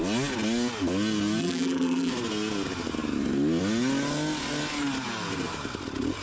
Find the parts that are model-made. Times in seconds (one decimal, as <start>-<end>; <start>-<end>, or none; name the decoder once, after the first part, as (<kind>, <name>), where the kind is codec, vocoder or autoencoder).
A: 1.4-2.1 (vocoder, BigVGAN v2)